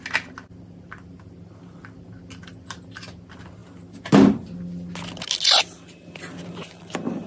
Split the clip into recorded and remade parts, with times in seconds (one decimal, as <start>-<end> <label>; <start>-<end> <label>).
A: 0.0-7.3 recorded